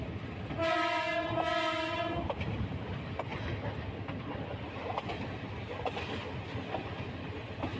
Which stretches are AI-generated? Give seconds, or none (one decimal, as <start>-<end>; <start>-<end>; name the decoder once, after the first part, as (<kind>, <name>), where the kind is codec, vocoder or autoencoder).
none